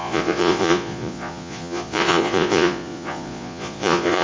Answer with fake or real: fake